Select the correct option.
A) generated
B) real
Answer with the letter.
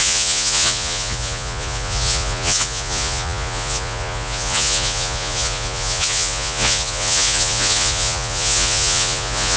A